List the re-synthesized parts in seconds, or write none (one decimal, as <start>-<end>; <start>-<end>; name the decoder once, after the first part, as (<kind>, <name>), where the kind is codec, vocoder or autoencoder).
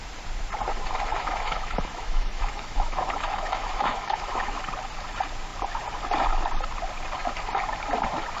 1.1-4.6 (autoencoder, DAC-VAE)